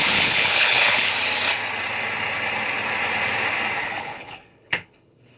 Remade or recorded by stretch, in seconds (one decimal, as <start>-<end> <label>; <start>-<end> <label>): 0.0-1.1 remade; 1.1-3.8 recorded; 3.8-5.4 remade